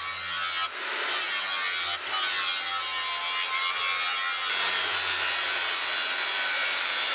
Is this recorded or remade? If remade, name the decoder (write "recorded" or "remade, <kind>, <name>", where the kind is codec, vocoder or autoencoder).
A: recorded